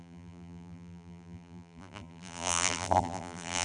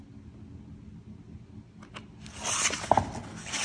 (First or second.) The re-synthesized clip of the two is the first